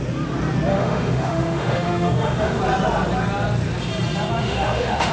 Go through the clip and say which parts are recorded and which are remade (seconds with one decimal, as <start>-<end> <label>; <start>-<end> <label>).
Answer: 0.0-0.7 recorded; 0.7-2.6 remade; 2.6-4.4 recorded; 4.4-5.1 remade

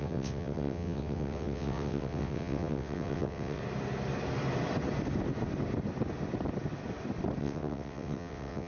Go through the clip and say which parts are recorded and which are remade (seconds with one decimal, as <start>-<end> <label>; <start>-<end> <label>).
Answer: 0.0-3.6 remade; 3.6-7.4 recorded; 7.4-8.7 remade

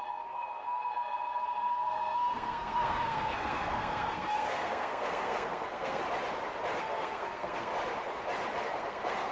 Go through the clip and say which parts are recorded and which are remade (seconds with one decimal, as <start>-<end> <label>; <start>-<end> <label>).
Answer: 0.0-6.0 remade; 6.0-6.8 recorded; 6.8-7.7 remade; 7.7-8.6 recorded; 8.6-9.3 remade

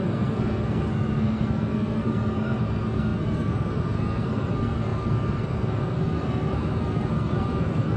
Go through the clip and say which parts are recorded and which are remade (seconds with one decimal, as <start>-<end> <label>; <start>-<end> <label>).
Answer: 0.0-8.0 remade

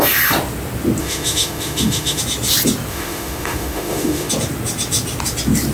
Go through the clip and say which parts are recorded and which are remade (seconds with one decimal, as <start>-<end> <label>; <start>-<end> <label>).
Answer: 0.0-1.0 recorded; 1.0-2.2 remade; 2.2-2.9 recorded; 2.9-4.3 remade; 4.3-5.7 recorded

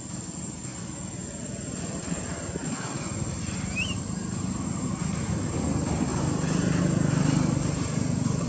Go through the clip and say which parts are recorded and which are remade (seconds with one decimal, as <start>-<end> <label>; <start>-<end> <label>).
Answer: 0.0-8.5 recorded